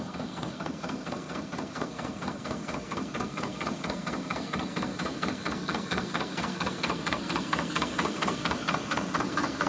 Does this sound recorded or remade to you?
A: remade